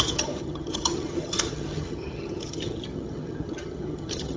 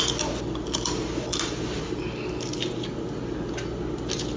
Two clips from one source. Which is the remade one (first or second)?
first